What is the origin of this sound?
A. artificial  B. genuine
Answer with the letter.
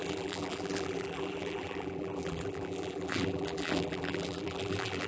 A